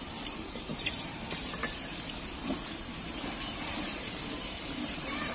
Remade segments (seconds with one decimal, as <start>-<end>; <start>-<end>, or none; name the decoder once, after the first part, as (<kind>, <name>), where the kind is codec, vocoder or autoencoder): 0.0-5.3 (vocoder, BigVGAN v2)